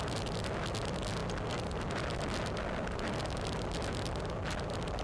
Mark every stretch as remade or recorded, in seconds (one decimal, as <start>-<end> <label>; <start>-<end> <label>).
0.0-5.0 recorded